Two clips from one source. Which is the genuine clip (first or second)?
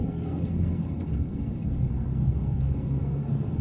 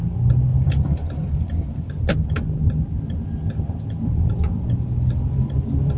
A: second